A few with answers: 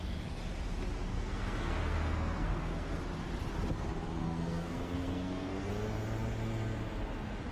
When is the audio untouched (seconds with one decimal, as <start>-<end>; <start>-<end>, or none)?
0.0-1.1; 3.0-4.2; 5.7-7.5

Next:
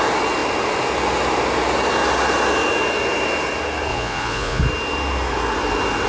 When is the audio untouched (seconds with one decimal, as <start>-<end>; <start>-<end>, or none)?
0.0-3.9; 4.6-6.1

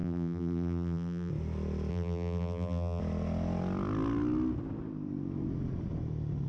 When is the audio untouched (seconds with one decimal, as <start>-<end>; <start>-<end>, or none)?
1.3-1.9; 3.0-6.5